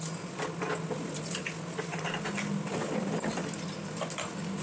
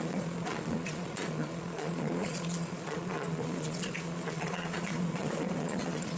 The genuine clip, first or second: first